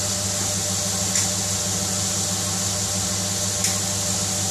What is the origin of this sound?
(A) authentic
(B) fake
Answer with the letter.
A